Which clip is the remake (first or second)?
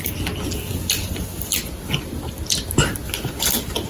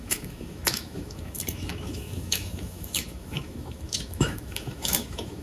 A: second